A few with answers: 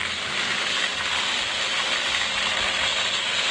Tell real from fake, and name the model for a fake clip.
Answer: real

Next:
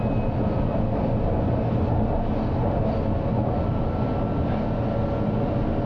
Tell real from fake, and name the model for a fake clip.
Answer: real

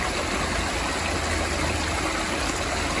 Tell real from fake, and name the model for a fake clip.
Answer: real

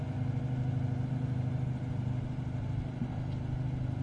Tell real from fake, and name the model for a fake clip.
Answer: real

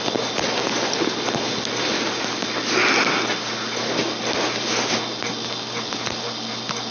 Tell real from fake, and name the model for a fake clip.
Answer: real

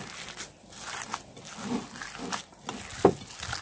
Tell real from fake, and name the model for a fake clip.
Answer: real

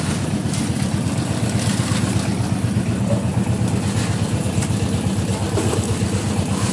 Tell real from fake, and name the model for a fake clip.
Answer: real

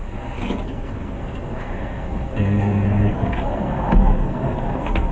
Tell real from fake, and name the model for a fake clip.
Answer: fake, codec, SNAC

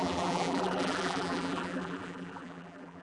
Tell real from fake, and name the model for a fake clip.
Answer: fake, vocoder, BigVGAN v2